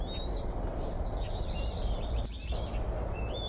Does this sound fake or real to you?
real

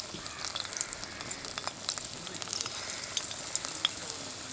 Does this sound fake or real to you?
real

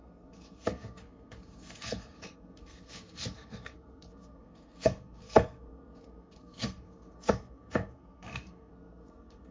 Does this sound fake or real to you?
fake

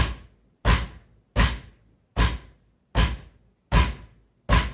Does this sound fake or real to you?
real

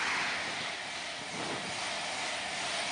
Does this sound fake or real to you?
real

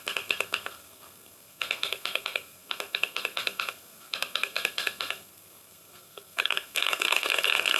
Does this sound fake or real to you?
fake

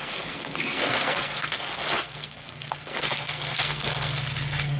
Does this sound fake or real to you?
fake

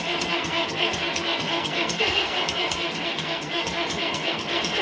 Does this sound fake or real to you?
fake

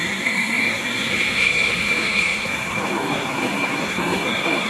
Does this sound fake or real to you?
fake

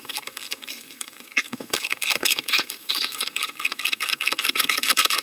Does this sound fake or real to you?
fake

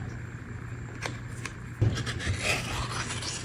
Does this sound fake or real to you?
real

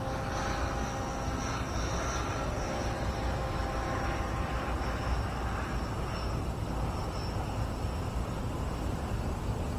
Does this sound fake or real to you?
real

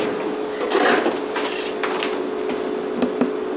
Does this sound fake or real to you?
real